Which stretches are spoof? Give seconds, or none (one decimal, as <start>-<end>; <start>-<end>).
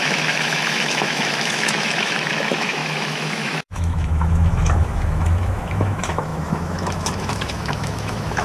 0.0-8.4